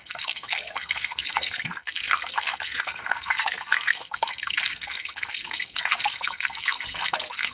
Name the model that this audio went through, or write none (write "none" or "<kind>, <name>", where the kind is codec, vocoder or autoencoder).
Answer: codec, SNAC